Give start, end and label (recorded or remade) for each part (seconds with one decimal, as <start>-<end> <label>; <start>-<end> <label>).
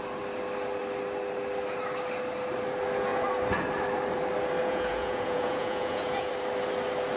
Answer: 0.0-4.6 recorded; 4.6-6.3 remade; 6.3-7.2 recorded